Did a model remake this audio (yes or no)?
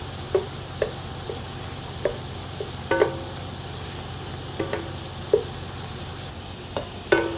no